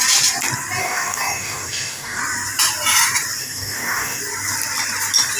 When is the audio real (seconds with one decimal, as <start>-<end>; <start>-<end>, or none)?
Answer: 0.0-0.8; 2.2-3.4; 4.2-5.4